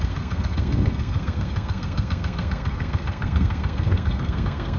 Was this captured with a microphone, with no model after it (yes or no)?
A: no